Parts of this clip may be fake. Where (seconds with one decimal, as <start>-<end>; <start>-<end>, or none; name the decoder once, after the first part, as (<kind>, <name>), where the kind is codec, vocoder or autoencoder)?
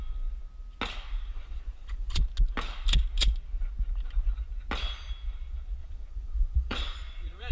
1.3-2.2 (vocoder, Vocos); 5.8-7.5